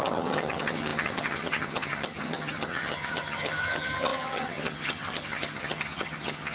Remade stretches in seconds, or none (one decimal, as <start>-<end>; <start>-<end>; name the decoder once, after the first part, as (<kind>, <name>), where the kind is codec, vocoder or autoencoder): 0.0-6.5 (vocoder, HiFi-GAN)